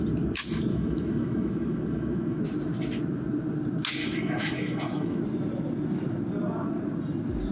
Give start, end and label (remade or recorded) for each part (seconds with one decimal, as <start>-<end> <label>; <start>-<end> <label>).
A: 0.0-0.7 recorded; 0.7-2.4 remade; 2.4-4.0 recorded; 4.0-5.2 remade; 5.2-7.5 recorded